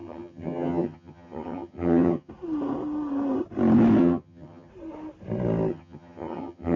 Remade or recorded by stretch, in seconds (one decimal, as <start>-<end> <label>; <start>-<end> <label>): 0.0-2.3 remade; 2.3-4.0 recorded; 4.0-4.7 remade; 4.7-5.7 recorded; 5.7-6.8 remade